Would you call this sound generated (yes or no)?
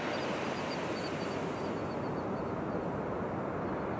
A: no